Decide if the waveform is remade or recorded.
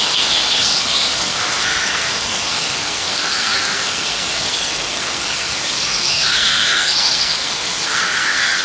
remade